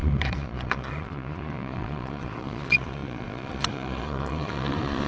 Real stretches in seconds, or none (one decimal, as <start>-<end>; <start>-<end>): none